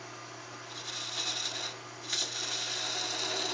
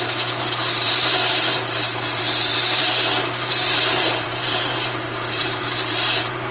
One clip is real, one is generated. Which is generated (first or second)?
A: second